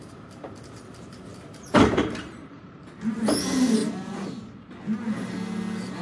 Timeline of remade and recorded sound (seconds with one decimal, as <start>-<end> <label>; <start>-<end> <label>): 0.0-3.8 remade; 3.8-6.0 recorded

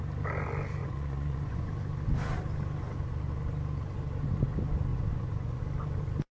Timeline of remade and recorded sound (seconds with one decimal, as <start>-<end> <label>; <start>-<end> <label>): 0.0-0.8 recorded; 0.8-1.7 remade; 1.7-4.9 recorded; 4.9-5.6 remade; 5.6-6.3 recorded

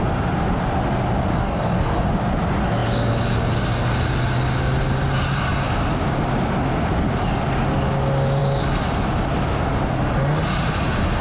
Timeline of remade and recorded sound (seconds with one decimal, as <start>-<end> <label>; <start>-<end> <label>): 0.0-1.3 recorded; 1.3-2.1 remade; 2.1-11.2 recorded